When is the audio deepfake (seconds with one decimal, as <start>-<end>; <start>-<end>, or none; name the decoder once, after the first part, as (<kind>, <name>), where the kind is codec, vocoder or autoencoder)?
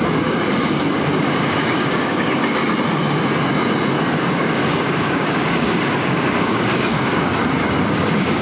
0.0-2.6 (codec, DAC); 4.1-7.3; 7.8-8.4